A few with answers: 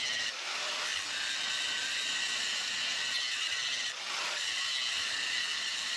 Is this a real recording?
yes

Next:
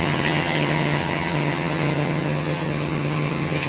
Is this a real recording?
no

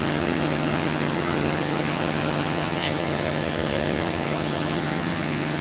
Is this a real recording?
no